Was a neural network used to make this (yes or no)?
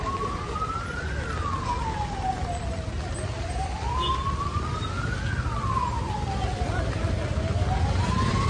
no